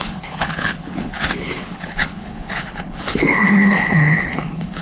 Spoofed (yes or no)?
yes